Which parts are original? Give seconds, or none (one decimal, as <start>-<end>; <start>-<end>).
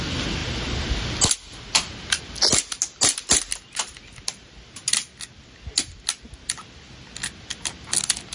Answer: 0.0-8.3